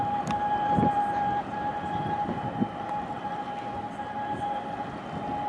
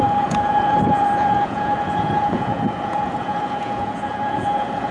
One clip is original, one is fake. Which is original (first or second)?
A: first